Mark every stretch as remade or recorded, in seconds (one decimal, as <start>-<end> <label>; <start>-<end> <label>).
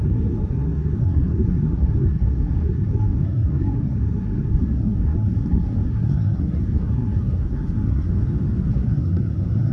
0.0-8.1 remade; 8.1-8.7 recorded; 8.7-9.7 remade